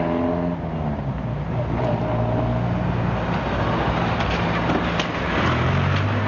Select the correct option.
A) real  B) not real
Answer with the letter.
A